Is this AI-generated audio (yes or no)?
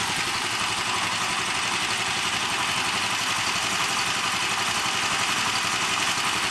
no